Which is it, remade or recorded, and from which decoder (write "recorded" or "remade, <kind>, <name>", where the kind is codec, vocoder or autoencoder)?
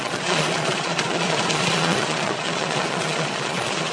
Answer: remade, vocoder, Vocos